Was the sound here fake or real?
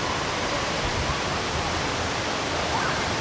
real